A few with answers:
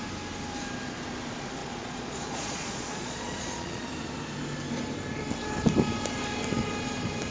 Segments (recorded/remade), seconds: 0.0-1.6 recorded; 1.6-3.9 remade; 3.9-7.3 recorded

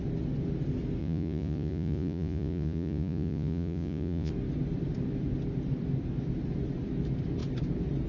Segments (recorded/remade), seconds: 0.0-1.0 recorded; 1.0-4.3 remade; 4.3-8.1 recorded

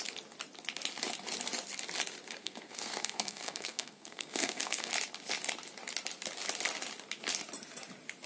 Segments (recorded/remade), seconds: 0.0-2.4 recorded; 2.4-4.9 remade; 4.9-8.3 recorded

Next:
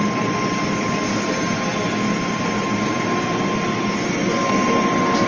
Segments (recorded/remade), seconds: 0.0-5.3 recorded

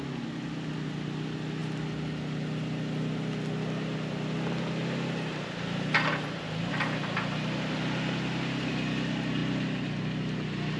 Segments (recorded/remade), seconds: 0.0-9.4 recorded; 9.4-10.0 remade; 10.0-10.8 recorded

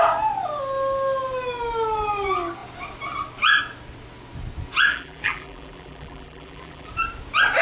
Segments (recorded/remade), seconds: 0.0-4.9 recorded; 4.9-6.9 remade; 6.9-7.6 recorded

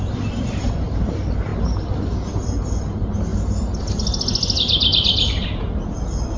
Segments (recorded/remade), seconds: 0.0-0.9 remade; 0.9-6.4 recorded

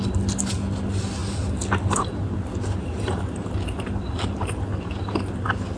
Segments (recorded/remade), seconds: 0.0-5.8 recorded